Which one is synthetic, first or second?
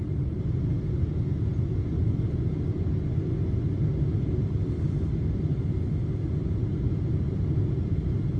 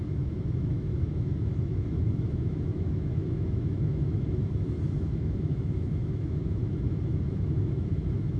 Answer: second